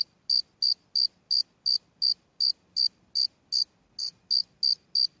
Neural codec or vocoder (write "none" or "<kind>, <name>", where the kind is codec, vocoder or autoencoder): none